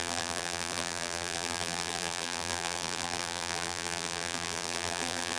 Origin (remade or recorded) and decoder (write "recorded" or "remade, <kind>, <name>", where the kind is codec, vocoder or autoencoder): remade, vocoder, BigVGAN v2